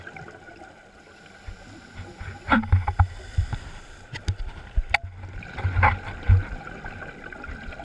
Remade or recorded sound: recorded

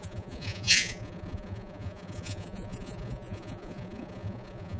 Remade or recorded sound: remade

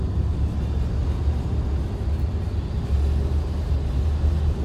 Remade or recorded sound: recorded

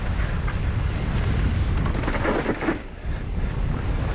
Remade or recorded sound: recorded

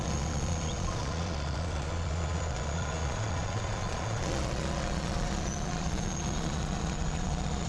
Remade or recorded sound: remade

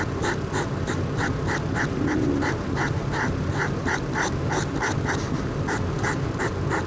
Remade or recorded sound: recorded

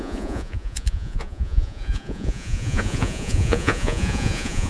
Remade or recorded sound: remade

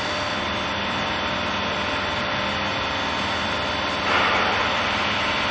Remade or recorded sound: recorded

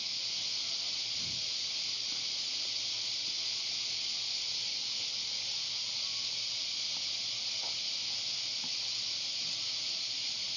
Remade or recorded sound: recorded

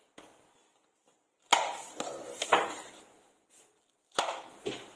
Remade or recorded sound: recorded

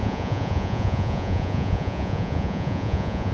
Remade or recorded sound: remade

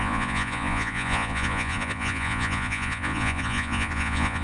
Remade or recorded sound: remade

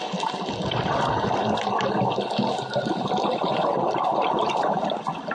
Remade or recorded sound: recorded